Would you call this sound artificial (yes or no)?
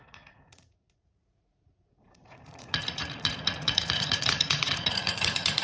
yes